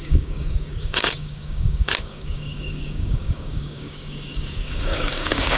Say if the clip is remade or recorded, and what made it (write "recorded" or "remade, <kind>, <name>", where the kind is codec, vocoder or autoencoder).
remade, codec, DAC